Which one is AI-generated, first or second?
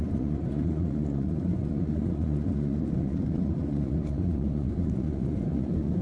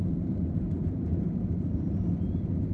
first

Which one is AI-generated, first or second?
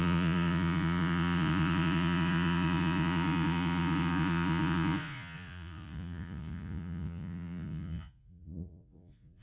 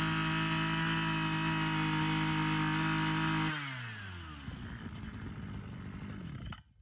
first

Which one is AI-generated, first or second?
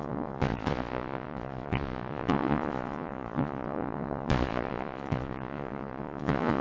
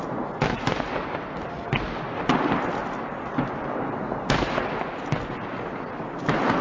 first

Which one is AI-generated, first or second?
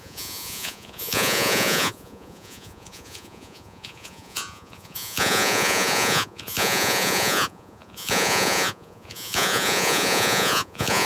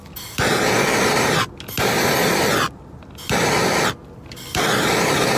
first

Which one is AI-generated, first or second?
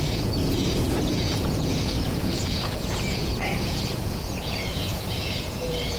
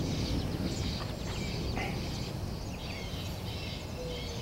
first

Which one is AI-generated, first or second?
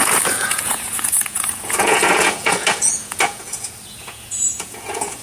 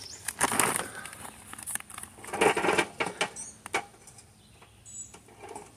first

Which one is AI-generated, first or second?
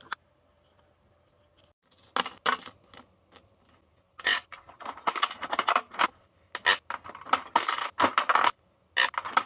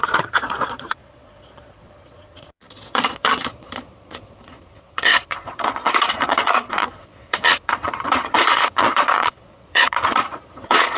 second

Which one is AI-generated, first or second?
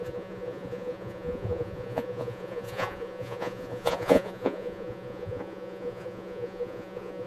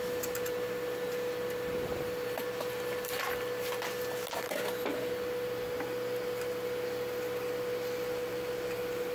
first